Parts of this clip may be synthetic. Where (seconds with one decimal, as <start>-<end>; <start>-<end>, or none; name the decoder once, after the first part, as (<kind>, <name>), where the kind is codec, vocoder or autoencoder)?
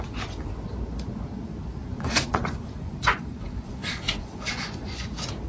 1.8-5.1 (vocoder, Vocos)